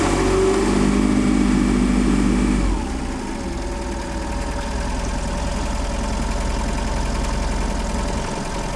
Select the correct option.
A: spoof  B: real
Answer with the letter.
B